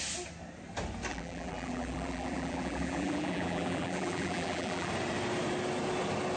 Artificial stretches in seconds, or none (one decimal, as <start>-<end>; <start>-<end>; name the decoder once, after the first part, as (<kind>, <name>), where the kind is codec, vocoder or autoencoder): 1.1-4.9 (vocoder, BigVGAN v2)